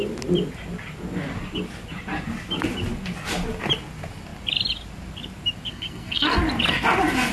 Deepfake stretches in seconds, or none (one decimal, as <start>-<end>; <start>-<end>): 5.7-6.4